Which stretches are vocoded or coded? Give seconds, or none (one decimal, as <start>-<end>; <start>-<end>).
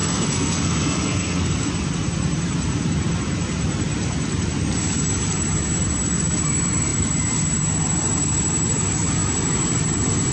0.0-1.7